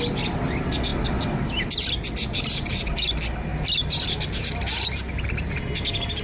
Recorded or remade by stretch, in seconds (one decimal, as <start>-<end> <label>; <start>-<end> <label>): 0.0-3.5 recorded; 3.5-5.6 remade; 5.6-6.2 recorded

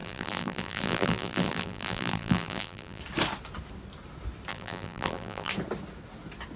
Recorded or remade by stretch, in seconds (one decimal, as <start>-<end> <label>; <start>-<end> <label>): 0.0-3.0 remade; 3.0-4.5 recorded; 4.5-5.5 remade; 5.5-6.6 recorded

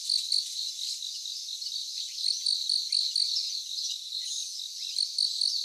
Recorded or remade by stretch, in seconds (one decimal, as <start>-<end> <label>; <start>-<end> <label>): 0.0-1.8 recorded; 1.8-3.5 remade; 3.5-5.6 recorded

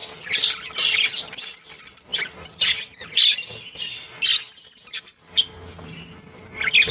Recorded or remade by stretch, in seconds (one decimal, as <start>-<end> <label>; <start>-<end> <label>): 0.0-6.9 recorded

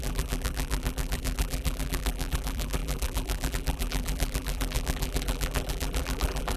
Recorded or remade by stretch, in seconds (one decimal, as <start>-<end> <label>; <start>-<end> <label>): 0.0-6.6 remade

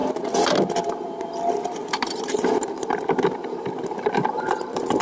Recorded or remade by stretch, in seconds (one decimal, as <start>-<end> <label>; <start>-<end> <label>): 0.0-1.8 recorded; 1.8-5.0 remade

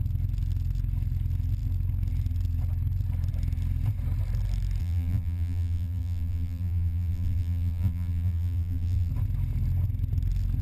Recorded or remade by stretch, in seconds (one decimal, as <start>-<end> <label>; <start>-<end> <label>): 0.0-4.8 recorded; 4.8-9.1 remade; 9.1-10.6 recorded